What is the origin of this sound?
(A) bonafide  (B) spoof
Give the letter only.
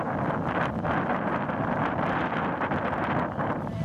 A